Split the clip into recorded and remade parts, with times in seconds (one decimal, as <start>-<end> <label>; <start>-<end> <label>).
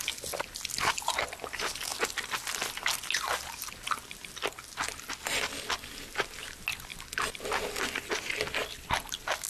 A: 0.0-9.5 recorded